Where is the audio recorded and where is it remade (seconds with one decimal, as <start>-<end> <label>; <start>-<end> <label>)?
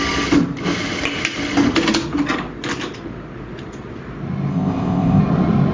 0.0-4.5 recorded; 4.5-5.2 remade; 5.2-5.7 recorded